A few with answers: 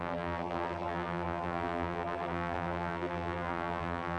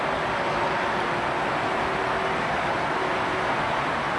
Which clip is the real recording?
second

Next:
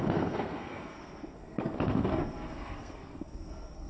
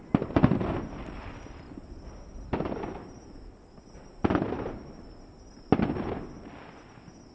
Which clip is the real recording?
second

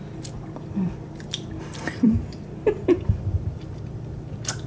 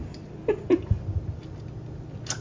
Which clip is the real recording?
second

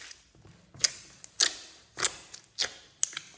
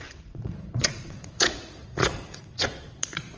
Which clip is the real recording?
first